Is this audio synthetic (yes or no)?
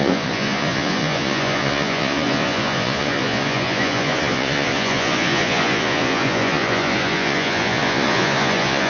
yes